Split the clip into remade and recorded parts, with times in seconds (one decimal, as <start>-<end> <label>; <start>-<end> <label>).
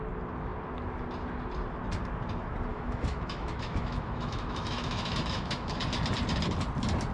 0.0-2.7 recorded; 2.7-5.8 remade; 5.8-7.1 recorded